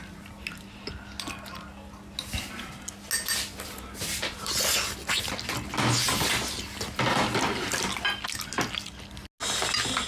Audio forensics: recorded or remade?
recorded